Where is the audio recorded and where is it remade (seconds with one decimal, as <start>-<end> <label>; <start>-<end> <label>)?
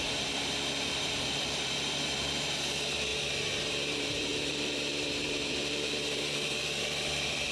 0.0-3.1 remade; 3.1-3.6 recorded; 3.6-7.5 remade